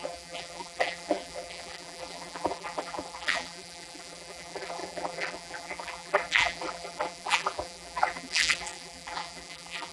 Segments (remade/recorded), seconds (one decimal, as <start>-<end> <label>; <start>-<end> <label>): 0.0-9.9 remade